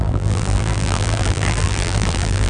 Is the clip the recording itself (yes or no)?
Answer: no